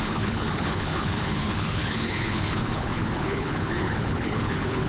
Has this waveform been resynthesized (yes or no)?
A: yes